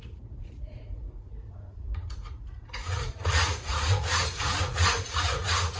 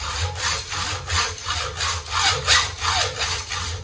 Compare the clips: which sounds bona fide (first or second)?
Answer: second